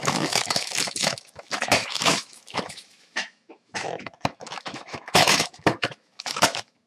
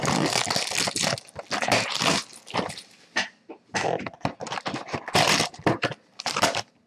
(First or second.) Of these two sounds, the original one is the second